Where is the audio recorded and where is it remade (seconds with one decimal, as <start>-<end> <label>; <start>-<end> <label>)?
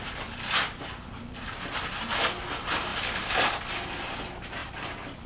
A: 0.0-2.9 recorded; 2.9-3.7 remade; 3.7-4.6 recorded; 4.6-5.3 remade